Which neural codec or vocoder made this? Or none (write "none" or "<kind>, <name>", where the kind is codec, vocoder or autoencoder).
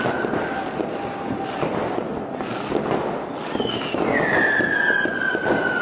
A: none